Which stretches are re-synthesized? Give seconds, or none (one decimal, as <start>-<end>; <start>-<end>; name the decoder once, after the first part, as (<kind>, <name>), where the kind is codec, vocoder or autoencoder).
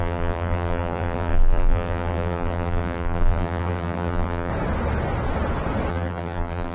0.0-4.5 (vocoder, BigVGAN v2); 5.9-6.7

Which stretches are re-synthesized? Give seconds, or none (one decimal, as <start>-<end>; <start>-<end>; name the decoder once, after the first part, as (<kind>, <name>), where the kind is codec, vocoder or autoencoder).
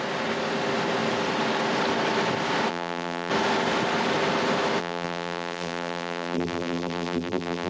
2.7-3.3 (vocoder, BigVGAN v2); 4.8-7.7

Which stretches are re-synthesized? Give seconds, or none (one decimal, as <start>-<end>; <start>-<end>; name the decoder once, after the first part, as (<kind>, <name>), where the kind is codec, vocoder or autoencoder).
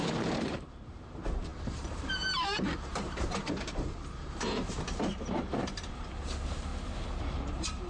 0.0-6.7 (vocoder, BigVGAN v2); 7.2-7.9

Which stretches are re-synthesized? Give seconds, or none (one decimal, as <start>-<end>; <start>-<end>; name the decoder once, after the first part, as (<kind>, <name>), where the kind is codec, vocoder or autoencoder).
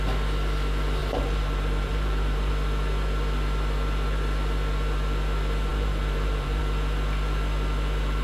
1.0-2.5 (vocoder, BigVGAN v2); 5.7-6.6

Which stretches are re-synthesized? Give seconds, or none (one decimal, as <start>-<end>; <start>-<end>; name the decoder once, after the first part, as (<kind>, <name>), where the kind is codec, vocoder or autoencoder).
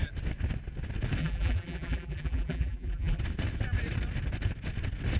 1.2-3.2 (vocoder, BigVGAN v2)